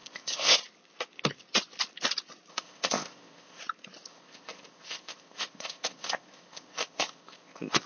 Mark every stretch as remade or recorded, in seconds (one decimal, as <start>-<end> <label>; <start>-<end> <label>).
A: 0.0-0.6 remade; 0.6-2.5 recorded; 2.5-3.6 remade; 3.6-4.1 recorded; 4.1-7.9 remade